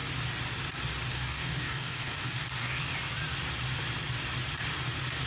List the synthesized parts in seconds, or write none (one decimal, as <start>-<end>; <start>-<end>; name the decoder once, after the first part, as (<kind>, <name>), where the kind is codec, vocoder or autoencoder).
1.1-2.8 (codec, DAC)